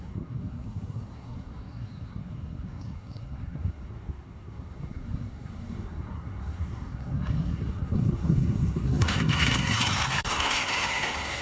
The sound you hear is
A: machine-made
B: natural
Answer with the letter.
A